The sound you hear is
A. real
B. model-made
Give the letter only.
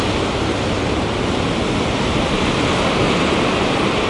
A